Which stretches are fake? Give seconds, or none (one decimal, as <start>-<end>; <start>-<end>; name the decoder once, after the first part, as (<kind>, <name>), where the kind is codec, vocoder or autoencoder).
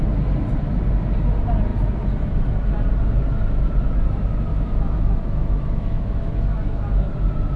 4.5-7.1 (autoencoder, DAC-VAE)